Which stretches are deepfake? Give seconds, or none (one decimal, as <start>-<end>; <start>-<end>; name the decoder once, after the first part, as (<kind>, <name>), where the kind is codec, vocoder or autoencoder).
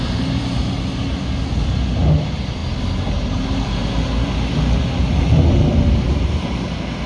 0.0-2.6 (vocoder, BigVGAN v2); 3.1-3.8; 5.2-7.1